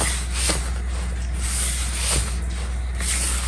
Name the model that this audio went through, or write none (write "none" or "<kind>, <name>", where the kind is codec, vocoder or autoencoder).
none